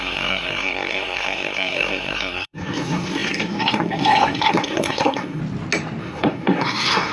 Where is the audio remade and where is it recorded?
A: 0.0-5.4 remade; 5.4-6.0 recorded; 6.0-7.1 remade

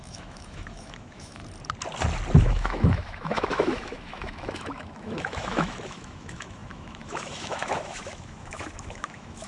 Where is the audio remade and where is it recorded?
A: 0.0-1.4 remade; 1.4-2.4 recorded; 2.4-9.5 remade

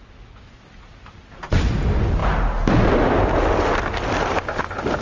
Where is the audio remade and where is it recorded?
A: 0.0-5.0 recorded

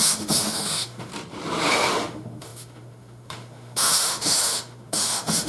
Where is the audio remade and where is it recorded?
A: 0.0-1.1 remade; 1.1-1.7 recorded; 1.7-5.5 remade

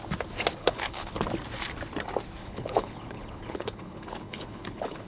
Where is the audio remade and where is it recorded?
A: 0.0-0.6 recorded; 0.6-1.2 remade; 1.2-2.4 recorded; 2.4-5.1 remade